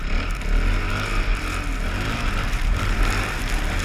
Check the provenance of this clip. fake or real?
real